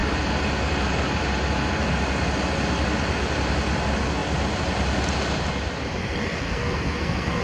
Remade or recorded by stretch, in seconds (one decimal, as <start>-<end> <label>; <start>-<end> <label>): 0.0-6.0 recorded; 6.0-7.4 remade